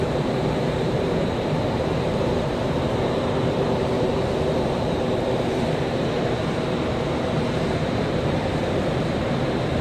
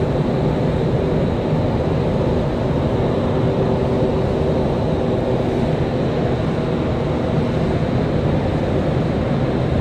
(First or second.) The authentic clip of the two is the second